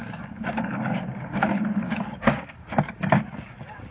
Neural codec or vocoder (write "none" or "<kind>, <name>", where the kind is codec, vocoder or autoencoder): codec, DAC